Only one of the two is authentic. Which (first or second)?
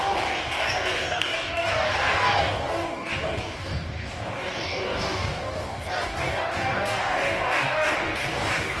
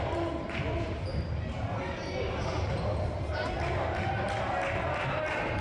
second